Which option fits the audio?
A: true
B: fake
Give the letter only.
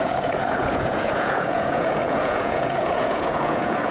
B